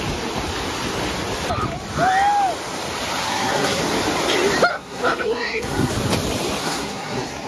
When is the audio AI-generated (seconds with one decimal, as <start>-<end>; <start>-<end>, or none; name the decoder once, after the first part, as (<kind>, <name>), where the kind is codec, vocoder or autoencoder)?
3.2-3.8 (codec, SNAC); 4.7-5.9; 6.6-7.5